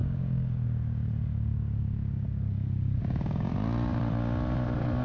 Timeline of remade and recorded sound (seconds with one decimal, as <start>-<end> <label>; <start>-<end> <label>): 0.0-3.5 remade; 3.5-5.0 recorded